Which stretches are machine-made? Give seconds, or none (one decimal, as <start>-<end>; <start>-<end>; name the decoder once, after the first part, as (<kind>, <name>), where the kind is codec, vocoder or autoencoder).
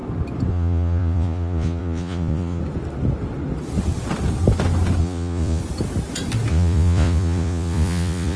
0.5-2.6 (vocoder, Vocos); 5.0-5.6; 6.5-8.4